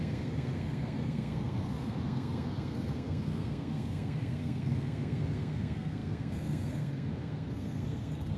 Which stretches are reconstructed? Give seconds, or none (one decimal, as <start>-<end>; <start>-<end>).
0.0-8.4